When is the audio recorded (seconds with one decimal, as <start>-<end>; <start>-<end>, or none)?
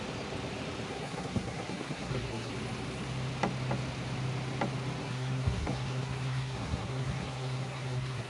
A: 0.0-0.9; 2.5-5.0